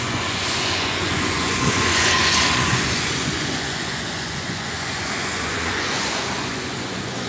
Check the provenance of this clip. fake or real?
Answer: fake